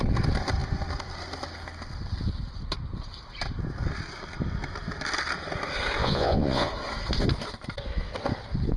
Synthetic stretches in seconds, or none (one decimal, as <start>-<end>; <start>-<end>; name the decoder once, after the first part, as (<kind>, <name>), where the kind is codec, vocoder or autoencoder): 6.0-6.7 (vocoder, Vocos)